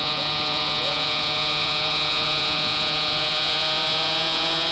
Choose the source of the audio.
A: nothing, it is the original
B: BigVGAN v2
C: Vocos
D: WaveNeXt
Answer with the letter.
C